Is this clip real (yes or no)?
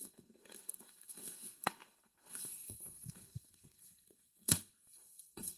no